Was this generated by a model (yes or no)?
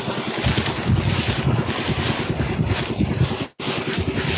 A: no